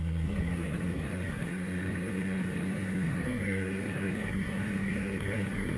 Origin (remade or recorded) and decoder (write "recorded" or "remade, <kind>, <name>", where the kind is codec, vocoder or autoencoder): remade, codec, SNAC